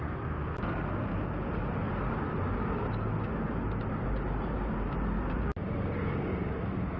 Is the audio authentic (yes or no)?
yes